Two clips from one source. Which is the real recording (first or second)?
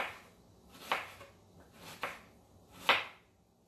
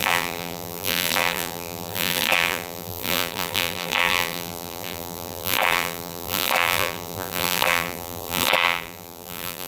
first